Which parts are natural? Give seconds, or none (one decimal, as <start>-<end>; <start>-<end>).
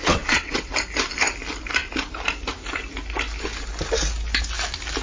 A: 0.7-5.0